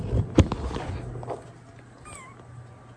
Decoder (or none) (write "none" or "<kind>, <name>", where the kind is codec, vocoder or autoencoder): none